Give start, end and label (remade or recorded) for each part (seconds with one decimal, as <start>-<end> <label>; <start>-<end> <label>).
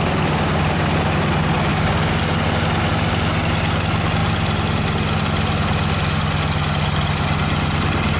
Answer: 0.0-8.2 recorded